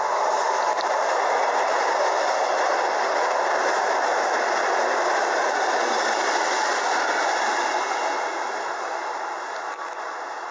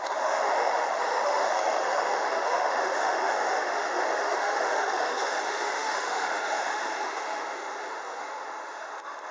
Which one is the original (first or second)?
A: first